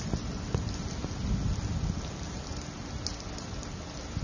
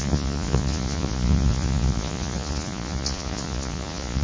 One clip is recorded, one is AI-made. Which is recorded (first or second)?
first